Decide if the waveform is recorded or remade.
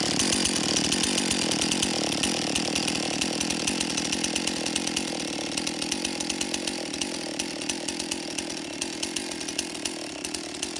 recorded